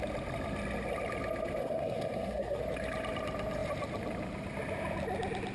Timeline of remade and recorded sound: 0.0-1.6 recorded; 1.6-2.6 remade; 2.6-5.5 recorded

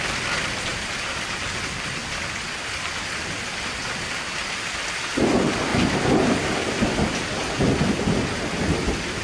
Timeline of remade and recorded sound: 0.0-9.2 recorded

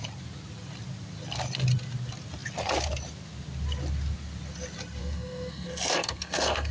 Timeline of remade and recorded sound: 0.0-5.0 recorded; 5.0-6.7 remade

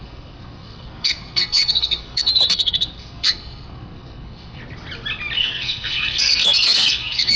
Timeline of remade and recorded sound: 0.0-4.6 remade; 4.6-5.4 recorded; 5.4-7.4 remade

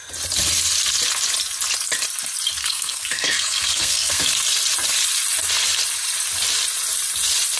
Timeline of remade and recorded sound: 0.0-2.6 recorded; 2.6-4.2 remade; 4.2-7.6 recorded